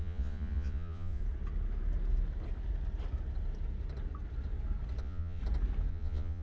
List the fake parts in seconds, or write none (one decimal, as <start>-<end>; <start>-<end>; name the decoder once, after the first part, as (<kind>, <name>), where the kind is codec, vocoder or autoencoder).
0.0-1.2 (vocoder, Vocos); 5.0-5.4; 5.9-6.4